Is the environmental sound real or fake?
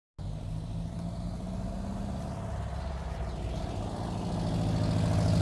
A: real